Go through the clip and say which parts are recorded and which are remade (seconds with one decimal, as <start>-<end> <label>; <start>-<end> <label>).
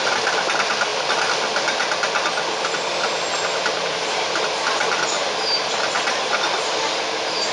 0.0-7.5 recorded